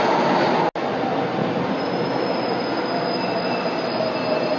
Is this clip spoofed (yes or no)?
no